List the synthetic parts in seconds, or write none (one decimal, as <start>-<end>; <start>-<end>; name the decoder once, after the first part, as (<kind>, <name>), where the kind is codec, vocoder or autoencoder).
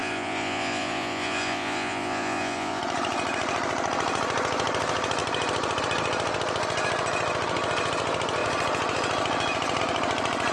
0.0-2.8 (vocoder, Vocos)